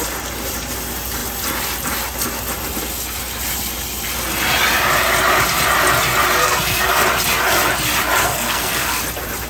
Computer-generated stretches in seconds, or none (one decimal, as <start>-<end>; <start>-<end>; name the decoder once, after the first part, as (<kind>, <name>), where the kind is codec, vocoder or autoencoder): 6.4-7.0 (codec, SNAC); 8.2-9.0